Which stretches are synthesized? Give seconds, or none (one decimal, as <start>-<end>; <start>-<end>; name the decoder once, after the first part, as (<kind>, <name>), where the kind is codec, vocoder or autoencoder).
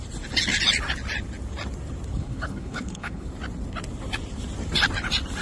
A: 2.1-3.3 (codec, HILCodec)